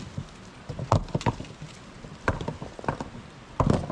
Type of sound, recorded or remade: recorded